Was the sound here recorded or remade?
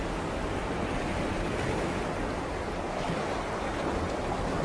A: recorded